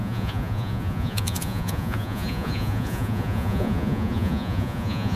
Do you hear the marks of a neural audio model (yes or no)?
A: yes